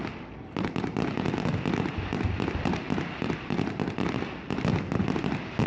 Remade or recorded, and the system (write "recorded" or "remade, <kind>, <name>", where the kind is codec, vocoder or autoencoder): remade, vocoder, BigVGAN v2